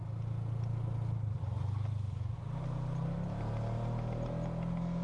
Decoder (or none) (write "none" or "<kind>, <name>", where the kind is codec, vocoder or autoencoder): none